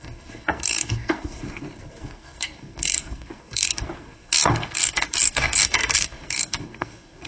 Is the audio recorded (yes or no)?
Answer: no